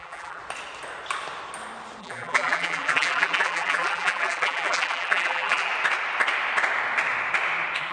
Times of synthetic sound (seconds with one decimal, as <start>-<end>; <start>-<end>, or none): 0.0-0.4; 2.0-5.7